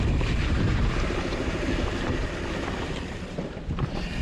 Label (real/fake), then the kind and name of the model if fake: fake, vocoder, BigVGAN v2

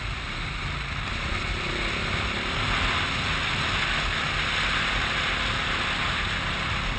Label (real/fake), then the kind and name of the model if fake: real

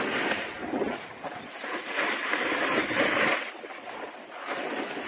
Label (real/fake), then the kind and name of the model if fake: real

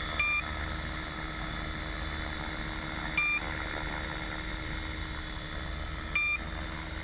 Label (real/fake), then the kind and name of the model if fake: real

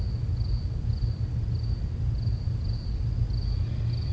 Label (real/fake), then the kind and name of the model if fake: real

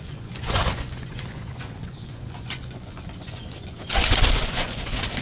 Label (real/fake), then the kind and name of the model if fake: fake, vocoder, Vocos